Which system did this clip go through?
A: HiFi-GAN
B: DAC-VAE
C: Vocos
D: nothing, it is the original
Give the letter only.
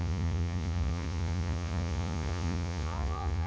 C